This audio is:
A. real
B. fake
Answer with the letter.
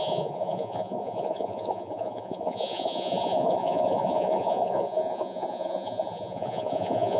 B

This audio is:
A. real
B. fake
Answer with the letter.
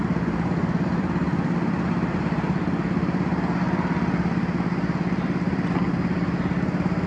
A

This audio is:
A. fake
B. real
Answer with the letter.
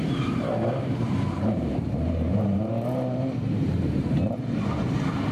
A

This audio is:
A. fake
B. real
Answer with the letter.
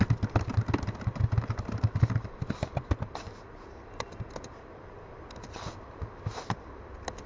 B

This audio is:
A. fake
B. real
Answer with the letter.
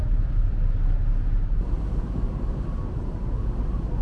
B